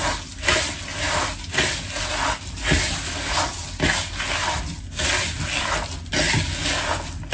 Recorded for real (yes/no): yes